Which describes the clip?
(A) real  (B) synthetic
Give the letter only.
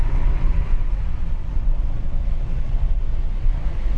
B